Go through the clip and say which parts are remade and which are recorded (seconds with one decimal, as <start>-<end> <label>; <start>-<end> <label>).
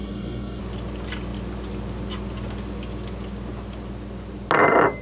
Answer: 0.0-0.6 remade; 0.6-5.0 recorded